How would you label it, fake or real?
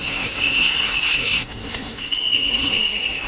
fake